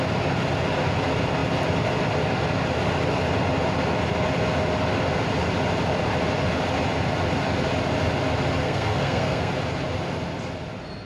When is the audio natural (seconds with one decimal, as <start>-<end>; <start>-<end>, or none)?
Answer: 0.0-8.6; 9.5-11.1